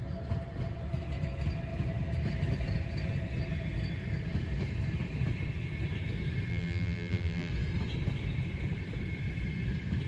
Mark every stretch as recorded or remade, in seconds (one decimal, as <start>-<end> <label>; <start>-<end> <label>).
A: 0.0-6.5 recorded; 6.5-7.5 remade; 7.5-10.1 recorded